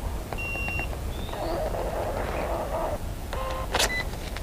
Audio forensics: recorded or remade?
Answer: recorded